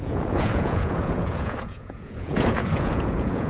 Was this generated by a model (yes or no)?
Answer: yes